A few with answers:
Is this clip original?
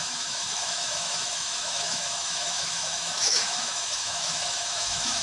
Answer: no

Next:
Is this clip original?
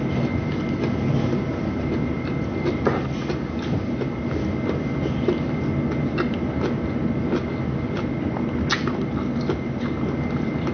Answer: yes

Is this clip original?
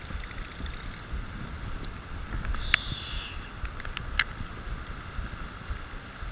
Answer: yes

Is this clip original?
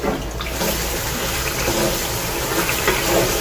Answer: yes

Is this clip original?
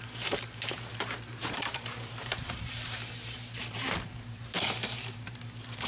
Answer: no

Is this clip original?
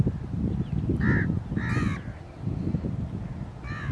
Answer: yes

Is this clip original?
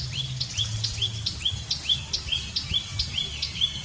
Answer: yes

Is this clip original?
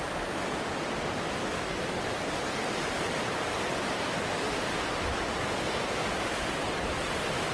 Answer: no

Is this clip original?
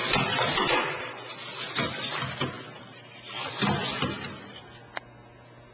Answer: yes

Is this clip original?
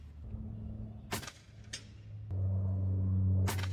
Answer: yes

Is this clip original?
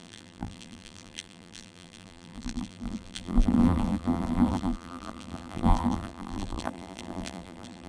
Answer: no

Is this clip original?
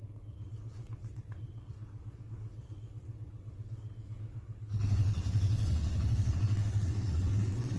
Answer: no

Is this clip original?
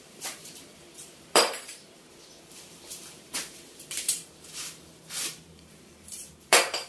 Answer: no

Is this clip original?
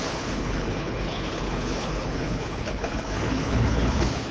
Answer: no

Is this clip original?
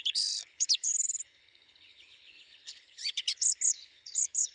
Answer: no